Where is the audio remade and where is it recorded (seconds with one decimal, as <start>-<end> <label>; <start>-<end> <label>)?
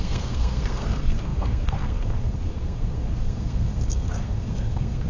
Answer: 0.0-5.1 remade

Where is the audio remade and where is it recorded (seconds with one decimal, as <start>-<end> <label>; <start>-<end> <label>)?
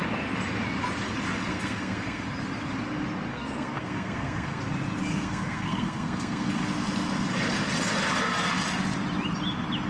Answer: 0.0-1.5 recorded; 1.5-2.2 remade; 2.2-3.3 recorded; 3.3-4.6 remade; 4.6-5.1 recorded; 5.1-6.5 remade; 6.5-9.9 recorded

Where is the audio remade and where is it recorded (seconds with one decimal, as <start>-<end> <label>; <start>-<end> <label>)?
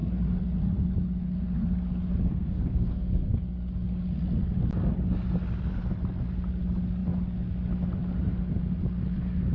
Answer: 0.0-2.2 recorded; 2.2-3.4 remade; 3.4-9.5 recorded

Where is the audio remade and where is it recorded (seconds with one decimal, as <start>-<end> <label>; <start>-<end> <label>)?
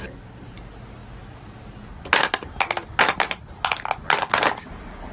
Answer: 0.0-5.1 recorded